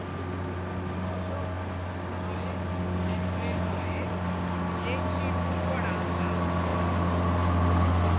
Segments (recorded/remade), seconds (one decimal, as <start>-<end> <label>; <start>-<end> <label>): 0.0-3.5 recorded; 3.5-4.1 remade; 4.1-8.2 recorded